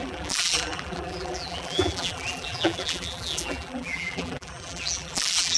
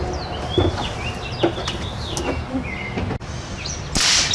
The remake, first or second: first